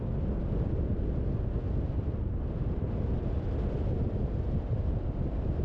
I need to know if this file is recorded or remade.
recorded